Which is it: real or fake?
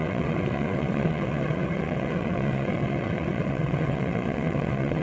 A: fake